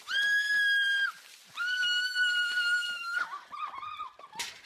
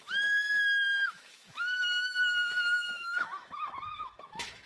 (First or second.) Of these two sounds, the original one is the first